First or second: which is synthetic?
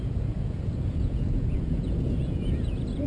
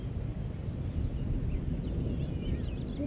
first